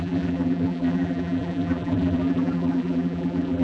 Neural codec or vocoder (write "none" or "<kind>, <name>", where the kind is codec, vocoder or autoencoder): vocoder, BigVGAN v2